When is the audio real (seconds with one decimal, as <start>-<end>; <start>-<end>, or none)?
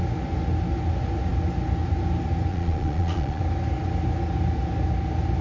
0.0-2.5; 3.4-5.4